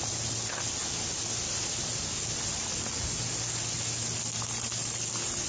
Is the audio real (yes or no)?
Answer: yes